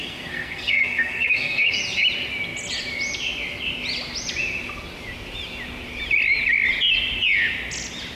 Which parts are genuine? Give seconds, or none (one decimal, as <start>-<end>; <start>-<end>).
1.8-8.1